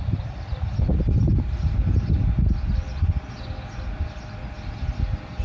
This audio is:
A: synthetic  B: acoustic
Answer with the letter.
B